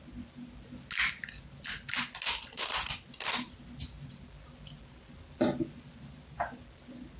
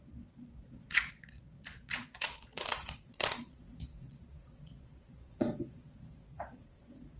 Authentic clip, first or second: first